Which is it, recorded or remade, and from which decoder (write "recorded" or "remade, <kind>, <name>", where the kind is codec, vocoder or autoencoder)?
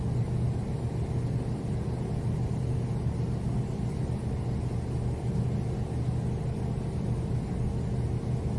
recorded